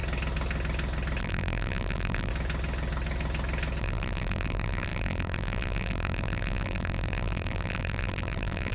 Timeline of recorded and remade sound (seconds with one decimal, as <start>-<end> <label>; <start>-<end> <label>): 0.0-1.2 recorded; 1.2-2.3 remade; 2.3-3.8 recorded; 3.8-8.7 remade